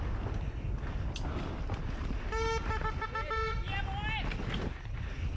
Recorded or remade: recorded